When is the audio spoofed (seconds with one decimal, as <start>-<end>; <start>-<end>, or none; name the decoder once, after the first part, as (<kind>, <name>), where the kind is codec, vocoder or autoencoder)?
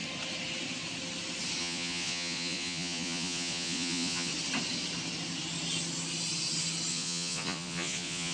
1.6-4.3 (vocoder, Vocos); 6.9-8.3